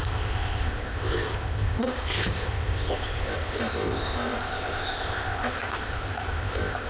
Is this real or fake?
fake